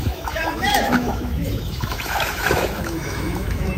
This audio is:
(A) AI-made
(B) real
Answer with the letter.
A